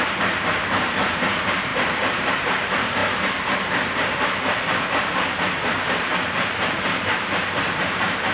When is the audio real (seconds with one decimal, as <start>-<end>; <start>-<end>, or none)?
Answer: none